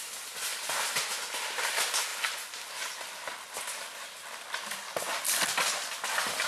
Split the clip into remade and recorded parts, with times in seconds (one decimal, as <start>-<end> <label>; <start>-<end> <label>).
0.0-6.5 recorded